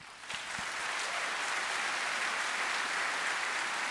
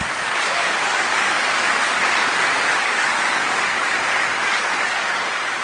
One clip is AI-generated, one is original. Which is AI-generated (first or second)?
second